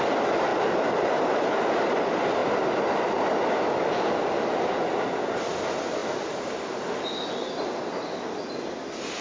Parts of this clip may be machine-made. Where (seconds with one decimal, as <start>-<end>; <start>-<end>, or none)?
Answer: 0.5-1.7; 6.0-6.7